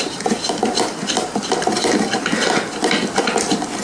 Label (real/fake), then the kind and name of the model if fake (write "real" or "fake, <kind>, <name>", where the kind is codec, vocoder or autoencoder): real